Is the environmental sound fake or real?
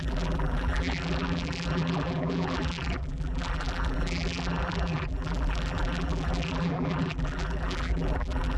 fake